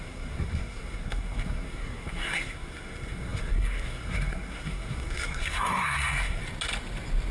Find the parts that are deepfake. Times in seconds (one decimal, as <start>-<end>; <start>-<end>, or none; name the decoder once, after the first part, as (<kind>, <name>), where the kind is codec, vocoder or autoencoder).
0.0-6.4 (codec, SNAC)